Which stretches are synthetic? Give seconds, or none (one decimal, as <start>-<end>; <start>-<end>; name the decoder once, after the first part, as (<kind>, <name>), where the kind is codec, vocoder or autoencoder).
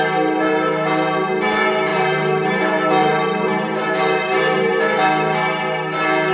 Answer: 1.9-2.6 (vocoder, BigVGAN v2); 3.0-4.7